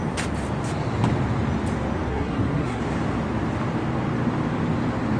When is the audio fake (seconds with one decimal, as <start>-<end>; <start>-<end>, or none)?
2.1-2.8